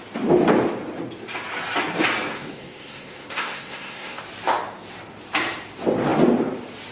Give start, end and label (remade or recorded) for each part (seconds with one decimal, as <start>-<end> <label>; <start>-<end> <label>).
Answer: 0.0-2.3 recorded; 2.3-4.2 remade; 4.2-6.9 recorded